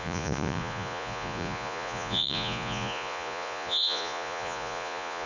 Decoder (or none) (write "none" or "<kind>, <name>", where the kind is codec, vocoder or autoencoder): vocoder, Vocos